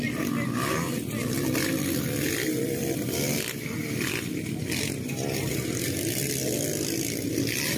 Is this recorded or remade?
recorded